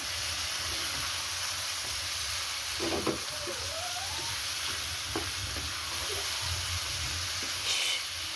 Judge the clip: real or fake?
real